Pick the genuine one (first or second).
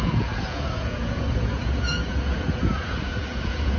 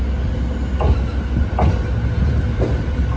second